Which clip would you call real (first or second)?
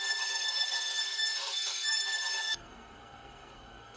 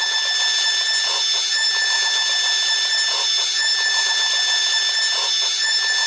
second